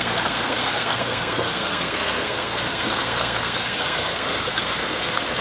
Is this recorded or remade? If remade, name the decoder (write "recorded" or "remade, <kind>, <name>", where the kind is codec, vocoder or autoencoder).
remade, codec, SNAC